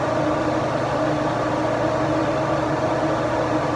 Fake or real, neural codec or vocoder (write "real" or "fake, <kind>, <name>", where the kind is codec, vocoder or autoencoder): real